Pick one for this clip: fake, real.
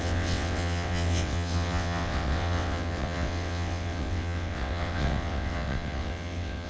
fake